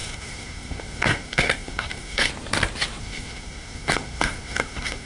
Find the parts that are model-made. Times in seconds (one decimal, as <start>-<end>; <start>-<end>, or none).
0.0-2.3; 3.0-5.1